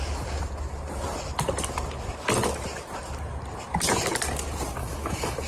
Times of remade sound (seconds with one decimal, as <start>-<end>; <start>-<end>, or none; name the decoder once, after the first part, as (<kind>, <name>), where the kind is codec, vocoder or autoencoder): 4.8-5.5 (autoencoder, DAC-VAE)